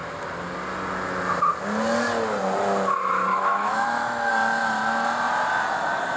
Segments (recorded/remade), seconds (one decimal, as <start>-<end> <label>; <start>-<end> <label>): 0.0-3.3 recorded; 3.3-4.3 remade; 4.3-6.2 recorded